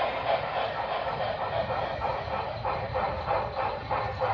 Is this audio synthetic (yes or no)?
yes